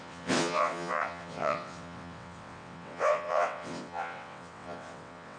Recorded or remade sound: remade